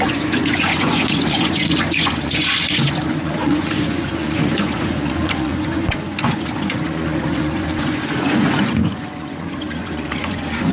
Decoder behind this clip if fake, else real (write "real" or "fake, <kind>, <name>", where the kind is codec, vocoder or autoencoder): fake, vocoder, Vocos